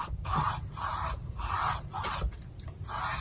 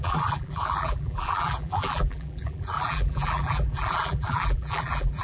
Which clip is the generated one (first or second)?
second